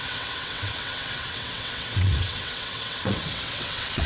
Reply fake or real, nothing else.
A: fake